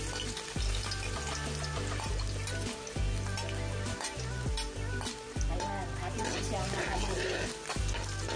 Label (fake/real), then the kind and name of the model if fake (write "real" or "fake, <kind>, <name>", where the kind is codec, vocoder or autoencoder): real